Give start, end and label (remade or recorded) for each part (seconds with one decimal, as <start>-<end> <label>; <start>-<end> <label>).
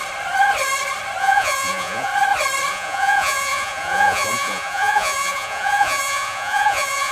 0.0-1.2 recorded; 1.2-2.1 remade; 2.1-2.7 recorded; 2.7-7.1 remade